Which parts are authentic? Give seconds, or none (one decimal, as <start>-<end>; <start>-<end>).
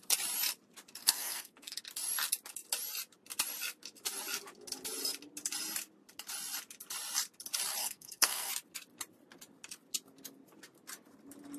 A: 0.0-1.0; 1.8-7.8; 8.5-11.6